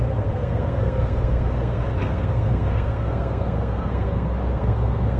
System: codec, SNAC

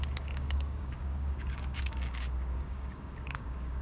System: codec, DAC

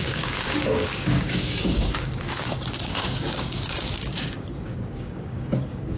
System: codec, DAC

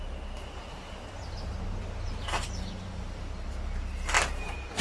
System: none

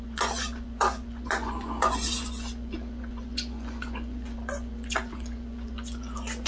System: vocoder, Vocos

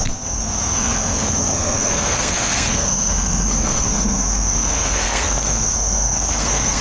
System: codec, SNAC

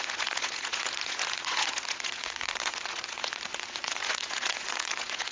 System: vocoder, Vocos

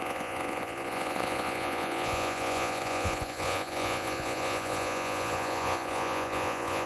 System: vocoder, Vocos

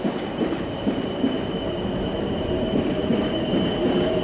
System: vocoder, BigVGAN v2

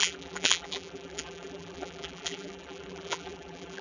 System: vocoder, BigVGAN v2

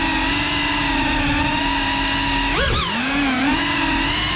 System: none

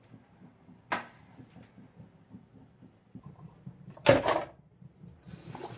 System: none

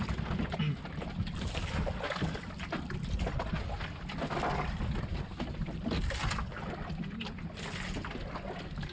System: none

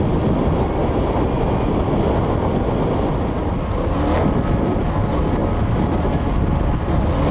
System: none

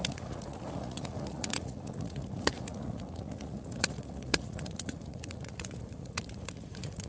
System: vocoder, Vocos